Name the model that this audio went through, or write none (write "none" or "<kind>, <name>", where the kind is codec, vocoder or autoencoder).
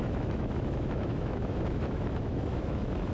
autoencoder, DAC-VAE